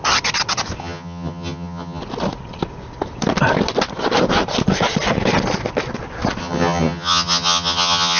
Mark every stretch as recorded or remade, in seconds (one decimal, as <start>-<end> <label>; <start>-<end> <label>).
0.0-0.8 recorded; 0.8-2.0 remade; 2.0-6.4 recorded; 6.4-8.2 remade